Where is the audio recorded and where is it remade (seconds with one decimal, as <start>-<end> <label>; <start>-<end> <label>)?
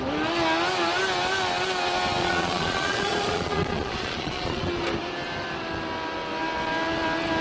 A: 0.0-2.2 recorded; 2.2-4.7 remade; 4.7-7.4 recorded